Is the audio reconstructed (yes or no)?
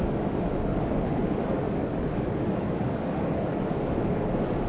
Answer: yes